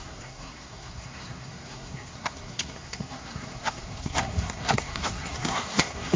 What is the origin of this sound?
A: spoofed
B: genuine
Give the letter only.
A